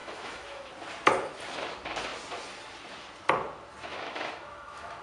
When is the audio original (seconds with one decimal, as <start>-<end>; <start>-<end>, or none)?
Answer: 0.7-3.9